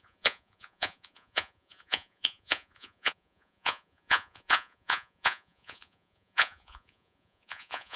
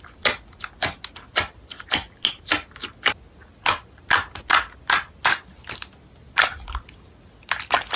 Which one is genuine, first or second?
second